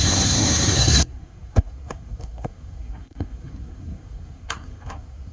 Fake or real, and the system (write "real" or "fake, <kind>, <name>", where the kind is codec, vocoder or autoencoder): fake, codec, SNAC